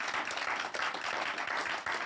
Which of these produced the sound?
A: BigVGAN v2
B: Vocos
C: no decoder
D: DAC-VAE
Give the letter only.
C